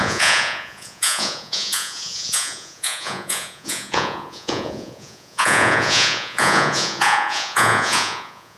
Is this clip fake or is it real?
fake